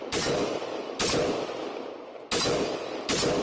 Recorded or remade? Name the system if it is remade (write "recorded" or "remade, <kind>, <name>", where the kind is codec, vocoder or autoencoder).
recorded